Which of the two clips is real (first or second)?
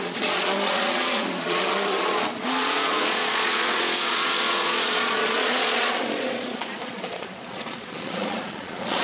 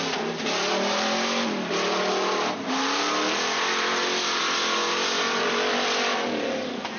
second